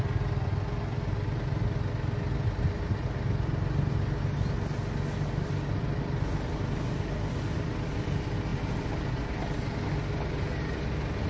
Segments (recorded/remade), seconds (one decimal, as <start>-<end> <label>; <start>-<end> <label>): 0.0-11.3 recorded